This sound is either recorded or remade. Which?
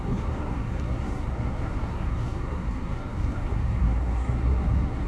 remade